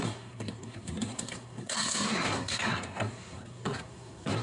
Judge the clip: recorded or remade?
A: remade